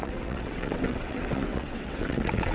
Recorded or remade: remade